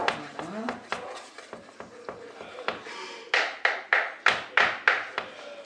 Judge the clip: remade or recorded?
recorded